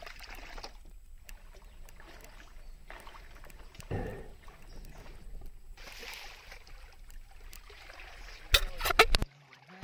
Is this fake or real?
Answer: real